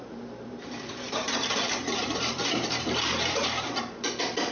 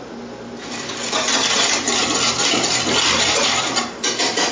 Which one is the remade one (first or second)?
first